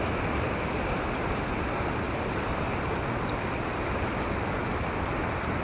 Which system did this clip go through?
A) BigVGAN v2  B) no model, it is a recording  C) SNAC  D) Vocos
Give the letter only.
B